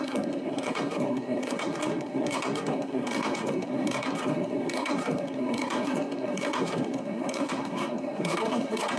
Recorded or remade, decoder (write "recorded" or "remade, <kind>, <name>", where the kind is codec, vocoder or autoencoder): remade, codec, SNAC